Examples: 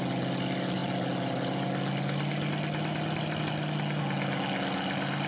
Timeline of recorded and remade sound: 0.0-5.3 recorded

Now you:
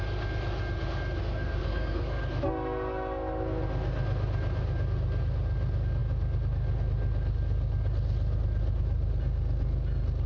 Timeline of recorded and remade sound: 0.0-1.2 recorded; 1.2-2.3 remade; 2.3-10.3 recorded

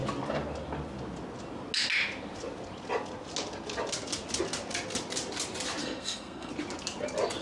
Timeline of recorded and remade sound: 0.0-5.8 recorded; 5.8-6.5 remade; 6.5-7.4 recorded